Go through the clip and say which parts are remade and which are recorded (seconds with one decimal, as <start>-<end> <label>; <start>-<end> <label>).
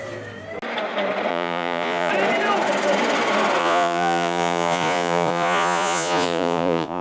0.0-1.3 recorded; 1.3-2.1 remade; 2.1-3.6 recorded; 3.6-7.0 remade